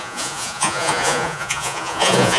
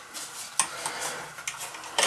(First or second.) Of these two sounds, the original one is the second